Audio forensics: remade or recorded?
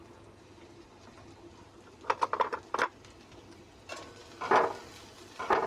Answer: recorded